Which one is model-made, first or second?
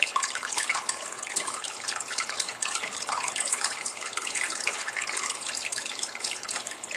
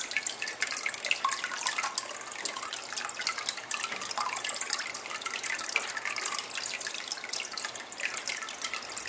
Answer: first